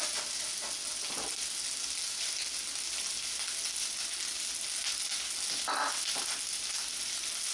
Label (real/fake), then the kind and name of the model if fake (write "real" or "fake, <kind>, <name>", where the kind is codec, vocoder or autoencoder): real